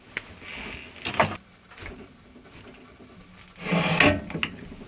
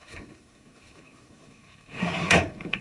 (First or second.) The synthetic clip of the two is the second